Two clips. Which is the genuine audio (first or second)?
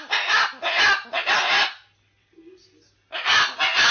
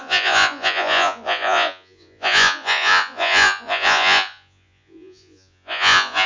first